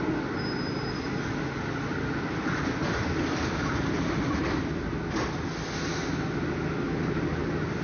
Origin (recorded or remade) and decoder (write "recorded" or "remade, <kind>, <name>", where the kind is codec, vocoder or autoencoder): recorded